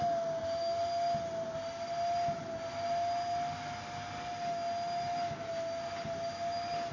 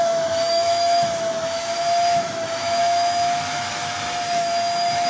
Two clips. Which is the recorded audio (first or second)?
first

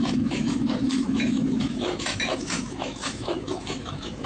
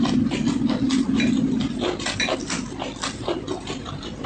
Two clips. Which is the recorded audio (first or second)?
second